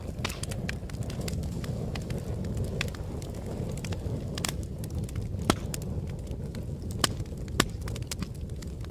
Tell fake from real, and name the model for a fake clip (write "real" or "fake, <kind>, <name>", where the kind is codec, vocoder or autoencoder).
real